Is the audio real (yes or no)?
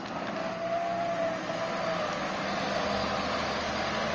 yes